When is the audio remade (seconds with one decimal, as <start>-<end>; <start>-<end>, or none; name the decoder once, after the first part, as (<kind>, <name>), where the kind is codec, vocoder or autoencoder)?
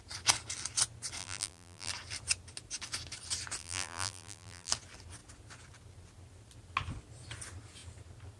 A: 1.2-1.9 (vocoder, BigVGAN v2); 3.6-4.7